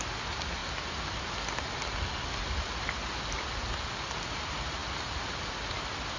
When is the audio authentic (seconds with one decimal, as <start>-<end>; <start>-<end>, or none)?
0.0-6.2